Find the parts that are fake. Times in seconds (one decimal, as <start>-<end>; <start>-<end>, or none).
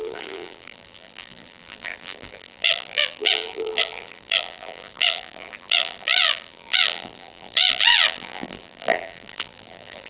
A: 0.0-10.1